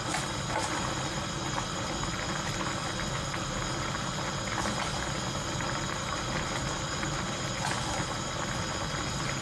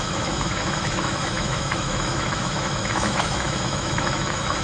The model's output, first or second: second